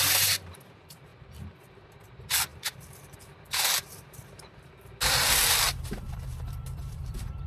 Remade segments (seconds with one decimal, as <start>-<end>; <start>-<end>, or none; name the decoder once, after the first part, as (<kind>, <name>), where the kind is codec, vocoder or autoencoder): 0.0-7.5 (vocoder, BigVGAN v2)